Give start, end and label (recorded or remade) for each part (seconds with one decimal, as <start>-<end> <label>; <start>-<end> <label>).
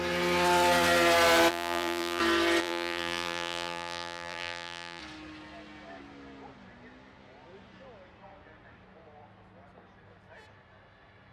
0.0-1.5 recorded; 1.5-2.2 remade; 2.2-2.6 recorded; 2.6-5.0 remade; 5.0-11.3 recorded